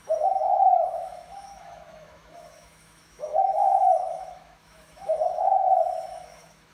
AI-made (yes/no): yes